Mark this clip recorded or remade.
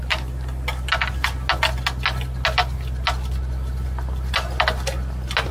recorded